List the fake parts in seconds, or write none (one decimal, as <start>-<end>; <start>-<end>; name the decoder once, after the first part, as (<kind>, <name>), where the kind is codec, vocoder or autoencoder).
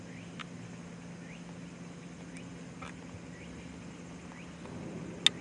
none